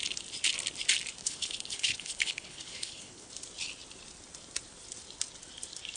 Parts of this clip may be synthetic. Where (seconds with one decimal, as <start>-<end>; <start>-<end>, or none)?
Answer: 1.2-3.3